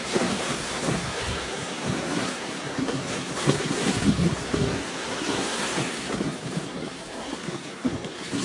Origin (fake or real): fake